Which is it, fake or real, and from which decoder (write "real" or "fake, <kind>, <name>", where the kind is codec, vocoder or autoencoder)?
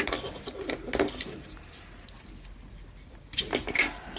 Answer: real